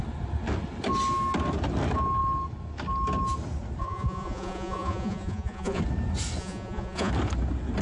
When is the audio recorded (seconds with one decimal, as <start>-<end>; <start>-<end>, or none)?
0.0-3.8; 5.8-6.4; 7.1-7.8